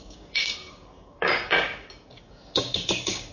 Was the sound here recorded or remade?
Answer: remade